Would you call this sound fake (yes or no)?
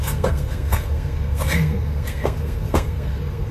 yes